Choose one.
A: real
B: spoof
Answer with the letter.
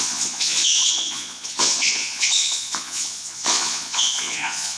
B